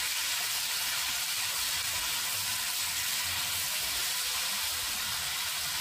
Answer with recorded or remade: recorded